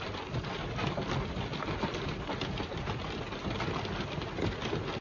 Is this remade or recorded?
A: recorded